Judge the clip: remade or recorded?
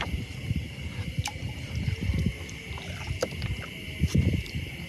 remade